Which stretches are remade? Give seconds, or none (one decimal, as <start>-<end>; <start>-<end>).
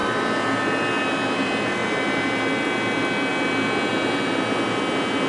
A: none